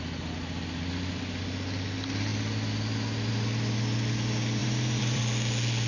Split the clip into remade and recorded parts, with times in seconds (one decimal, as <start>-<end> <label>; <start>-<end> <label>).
0.0-4.6 recorded; 4.6-5.2 remade; 5.2-5.9 recorded